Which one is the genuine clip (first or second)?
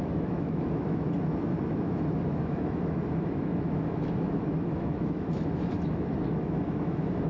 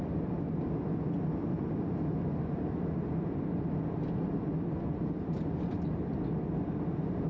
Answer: second